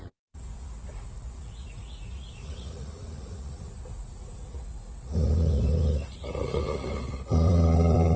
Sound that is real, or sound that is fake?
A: fake